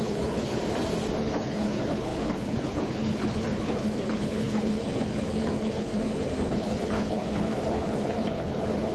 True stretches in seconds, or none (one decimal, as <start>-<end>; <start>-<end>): 0.6-1.2